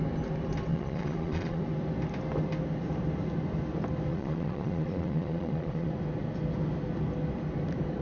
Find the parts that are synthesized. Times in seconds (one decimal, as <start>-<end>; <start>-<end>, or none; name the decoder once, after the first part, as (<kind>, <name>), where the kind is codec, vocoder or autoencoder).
0.7-1.6 (vocoder, Vocos); 4.1-5.9